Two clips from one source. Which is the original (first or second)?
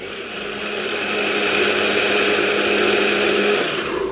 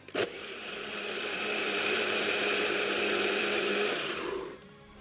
first